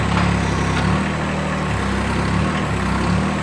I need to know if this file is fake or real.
real